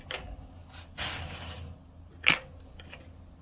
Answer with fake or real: real